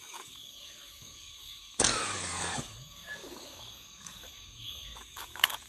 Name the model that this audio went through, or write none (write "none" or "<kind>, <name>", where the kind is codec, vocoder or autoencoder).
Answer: codec, DAC